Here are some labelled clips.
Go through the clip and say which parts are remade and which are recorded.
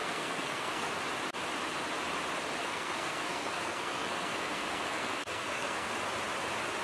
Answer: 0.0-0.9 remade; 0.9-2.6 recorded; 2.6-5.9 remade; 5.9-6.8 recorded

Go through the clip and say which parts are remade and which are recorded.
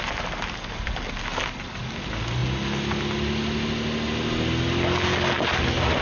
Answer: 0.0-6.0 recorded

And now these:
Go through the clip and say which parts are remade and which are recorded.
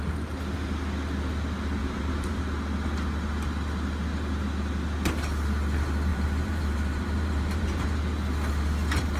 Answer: 0.0-1.8 recorded; 1.8-2.4 remade; 2.4-6.1 recorded; 6.1-8.0 remade; 8.0-9.2 recorded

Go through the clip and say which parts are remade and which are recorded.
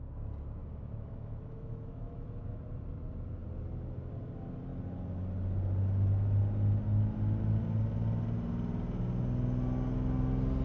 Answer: 0.0-0.6 recorded; 0.6-2.6 remade; 2.6-10.6 recorded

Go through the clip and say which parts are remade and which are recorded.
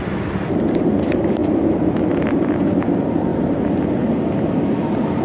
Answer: 0.0-5.2 recorded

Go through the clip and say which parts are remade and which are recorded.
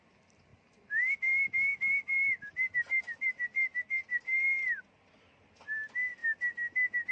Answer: 0.0-7.1 recorded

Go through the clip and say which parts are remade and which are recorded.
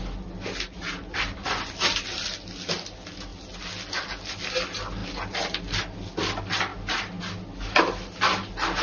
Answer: 0.0-5.0 recorded; 5.0-5.8 remade; 5.8-6.7 recorded; 6.7-7.2 remade; 7.2-8.8 recorded